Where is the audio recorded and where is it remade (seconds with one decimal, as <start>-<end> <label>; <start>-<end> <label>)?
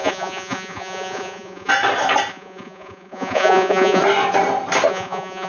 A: 0.0-1.7 remade; 1.7-2.3 recorded; 2.3-4.0 remade; 4.0-4.9 recorded; 4.9-5.5 remade